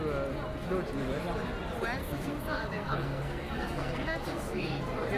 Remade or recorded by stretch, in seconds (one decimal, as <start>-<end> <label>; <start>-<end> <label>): 0.0-2.0 recorded; 2.0-4.8 remade; 4.8-5.2 recorded